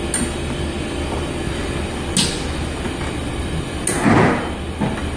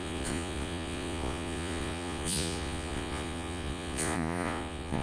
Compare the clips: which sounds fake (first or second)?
second